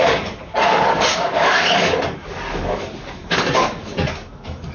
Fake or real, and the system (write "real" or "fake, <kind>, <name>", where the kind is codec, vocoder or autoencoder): fake, codec, DAC